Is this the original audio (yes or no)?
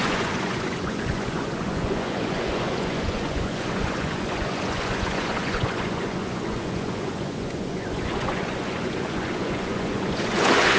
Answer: no